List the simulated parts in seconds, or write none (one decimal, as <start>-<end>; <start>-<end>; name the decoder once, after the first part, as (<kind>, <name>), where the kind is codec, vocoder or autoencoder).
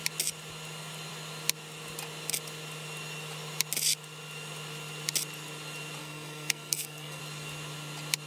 6.0-7.2 (codec, SNAC)